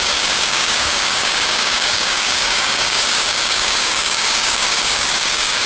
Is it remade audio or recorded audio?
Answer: remade